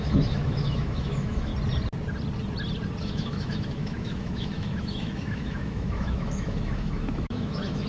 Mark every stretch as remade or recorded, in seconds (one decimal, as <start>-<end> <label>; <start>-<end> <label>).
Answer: 0.0-1.5 remade; 1.5-3.0 recorded; 3.0-7.9 remade